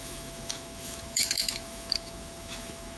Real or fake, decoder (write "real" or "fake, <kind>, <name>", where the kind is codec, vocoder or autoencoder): fake, autoencoder, DAC-VAE